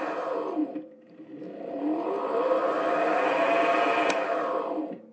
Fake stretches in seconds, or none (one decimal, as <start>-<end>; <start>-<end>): none